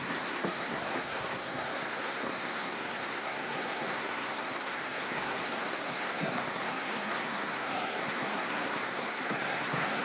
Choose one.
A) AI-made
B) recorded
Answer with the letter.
A